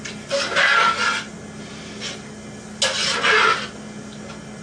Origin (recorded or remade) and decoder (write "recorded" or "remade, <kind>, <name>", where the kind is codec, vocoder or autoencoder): recorded